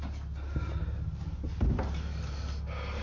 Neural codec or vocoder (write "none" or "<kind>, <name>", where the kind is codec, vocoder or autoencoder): none